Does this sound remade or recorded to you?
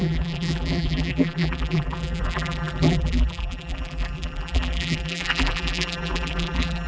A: remade